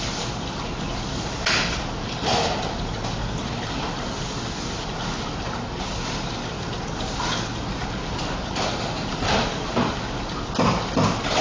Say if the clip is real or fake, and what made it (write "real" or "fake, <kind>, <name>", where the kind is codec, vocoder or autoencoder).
real